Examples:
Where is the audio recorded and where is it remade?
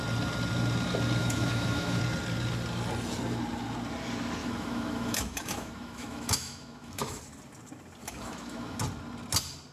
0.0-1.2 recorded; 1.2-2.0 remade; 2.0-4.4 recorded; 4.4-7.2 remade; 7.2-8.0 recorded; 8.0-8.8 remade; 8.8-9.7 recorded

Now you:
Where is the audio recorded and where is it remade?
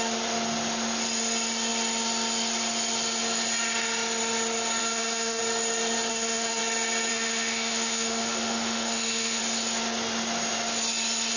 0.0-4.8 recorded; 4.8-5.4 remade; 5.4-6.1 recorded; 6.1-6.6 remade; 6.6-7.1 recorded; 7.1-9.4 remade; 9.4-11.4 recorded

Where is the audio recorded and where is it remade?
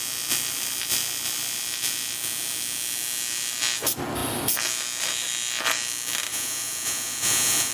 0.0-6.3 recorded; 6.3-7.7 remade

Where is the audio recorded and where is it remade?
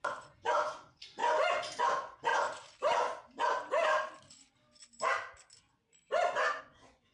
0.0-1.2 remade; 1.2-1.8 recorded; 1.8-2.3 remade; 2.3-6.6 recorded; 6.6-7.1 remade